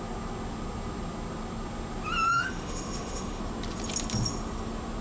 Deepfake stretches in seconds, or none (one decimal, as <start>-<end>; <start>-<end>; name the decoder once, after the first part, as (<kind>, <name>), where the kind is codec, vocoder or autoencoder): 2.3-3.4 (autoencoder, DAC-VAE)